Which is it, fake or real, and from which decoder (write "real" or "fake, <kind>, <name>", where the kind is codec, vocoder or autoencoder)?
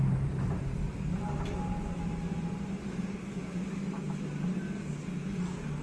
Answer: real